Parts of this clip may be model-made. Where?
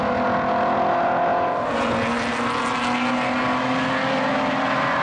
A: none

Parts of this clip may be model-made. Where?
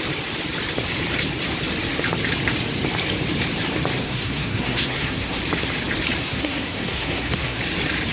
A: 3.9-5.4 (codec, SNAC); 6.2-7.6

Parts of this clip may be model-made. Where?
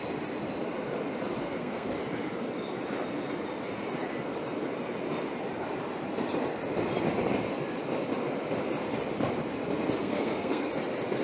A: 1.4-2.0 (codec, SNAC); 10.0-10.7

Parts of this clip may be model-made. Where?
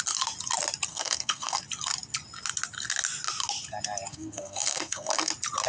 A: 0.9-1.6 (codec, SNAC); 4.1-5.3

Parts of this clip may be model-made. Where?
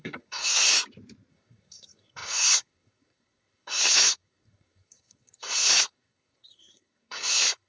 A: 0.0-0.7 (codec, SNAC); 1.3-7.7